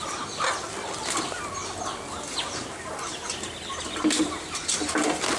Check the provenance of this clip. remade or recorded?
recorded